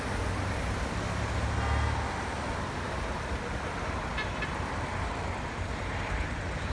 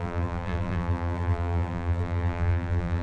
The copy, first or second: second